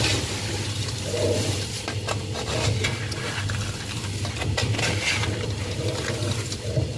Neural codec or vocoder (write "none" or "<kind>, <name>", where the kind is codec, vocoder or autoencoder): none